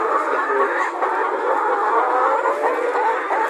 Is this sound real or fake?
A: real